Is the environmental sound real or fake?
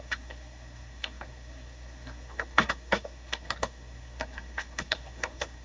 fake